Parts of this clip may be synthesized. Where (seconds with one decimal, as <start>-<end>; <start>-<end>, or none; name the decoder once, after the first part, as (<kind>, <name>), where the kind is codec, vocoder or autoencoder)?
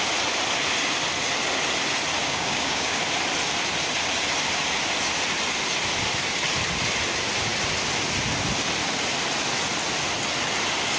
2.2-3.0 (codec, DAC)